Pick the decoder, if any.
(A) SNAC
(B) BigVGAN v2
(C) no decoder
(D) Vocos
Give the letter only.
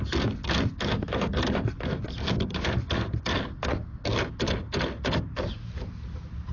C